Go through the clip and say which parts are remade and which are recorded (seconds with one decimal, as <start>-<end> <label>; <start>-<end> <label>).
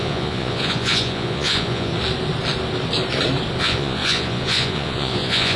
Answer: 0.0-1.9 remade; 1.9-3.6 recorded; 3.6-5.6 remade